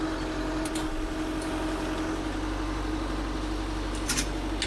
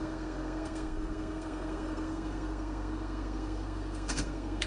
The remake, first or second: second